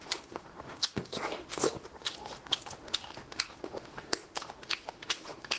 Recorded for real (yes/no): no